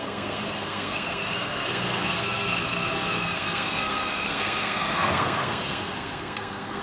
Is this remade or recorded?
remade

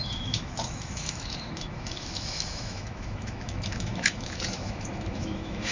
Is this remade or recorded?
remade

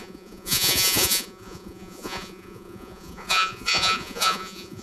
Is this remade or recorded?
remade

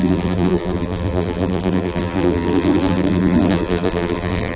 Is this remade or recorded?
remade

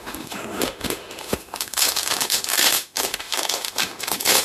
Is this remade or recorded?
remade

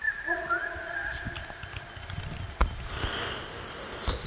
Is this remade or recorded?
recorded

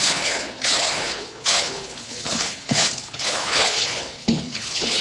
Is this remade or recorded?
remade